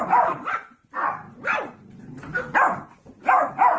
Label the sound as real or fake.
real